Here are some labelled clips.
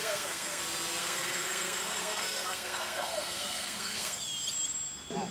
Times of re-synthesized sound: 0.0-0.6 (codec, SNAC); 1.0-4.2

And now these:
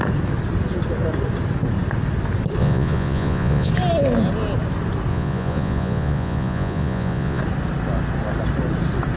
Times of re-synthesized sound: 2.6-3.7 (vocoder, Vocos); 5.1-7.4

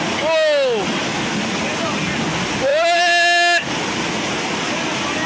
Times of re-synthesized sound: none

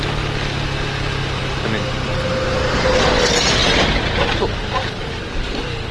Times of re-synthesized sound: none